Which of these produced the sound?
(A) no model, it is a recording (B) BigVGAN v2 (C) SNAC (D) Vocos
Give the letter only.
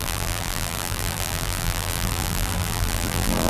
B